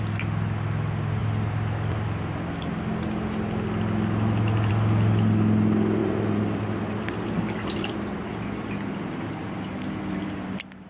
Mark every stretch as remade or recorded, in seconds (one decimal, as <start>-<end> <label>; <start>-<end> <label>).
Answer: 0.0-6.0 recorded; 6.0-6.7 remade; 6.7-10.9 recorded